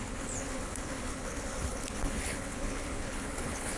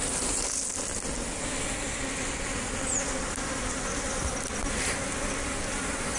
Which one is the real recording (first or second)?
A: second